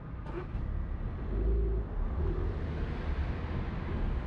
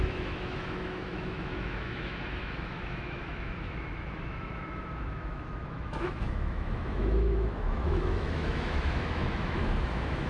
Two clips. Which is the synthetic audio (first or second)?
second